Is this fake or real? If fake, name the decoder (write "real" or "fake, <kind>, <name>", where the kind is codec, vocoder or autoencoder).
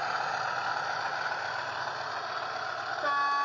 real